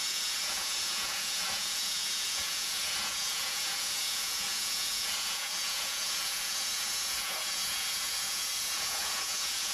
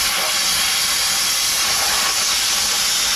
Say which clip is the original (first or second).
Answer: second